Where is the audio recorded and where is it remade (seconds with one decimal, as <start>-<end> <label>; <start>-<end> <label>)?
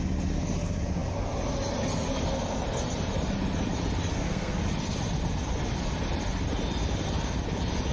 0.0-4.1 recorded; 4.1-4.6 remade; 4.6-7.9 recorded